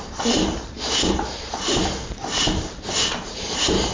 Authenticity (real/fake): real